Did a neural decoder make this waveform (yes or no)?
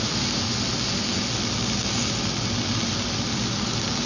no